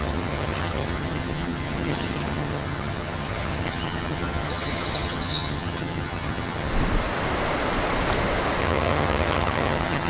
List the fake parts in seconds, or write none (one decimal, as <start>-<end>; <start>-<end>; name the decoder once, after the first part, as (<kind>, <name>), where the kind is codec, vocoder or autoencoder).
0.0-6.7 (vocoder, HiFi-GAN); 8.6-10.1